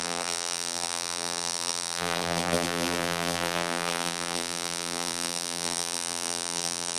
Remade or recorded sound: remade